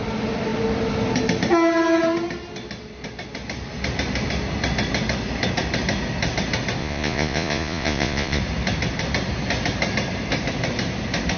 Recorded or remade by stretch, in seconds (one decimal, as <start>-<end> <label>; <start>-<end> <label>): 0.0-6.8 recorded; 6.8-8.4 remade; 8.4-11.4 recorded